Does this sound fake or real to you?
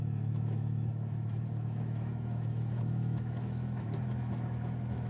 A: fake